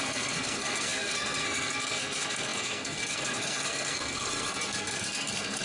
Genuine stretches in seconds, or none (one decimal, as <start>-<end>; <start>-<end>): none